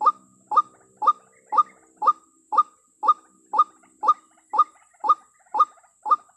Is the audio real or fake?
real